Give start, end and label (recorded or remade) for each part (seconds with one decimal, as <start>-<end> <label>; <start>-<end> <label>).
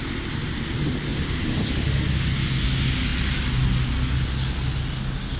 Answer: 0.0-5.4 recorded